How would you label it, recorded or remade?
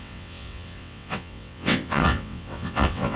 remade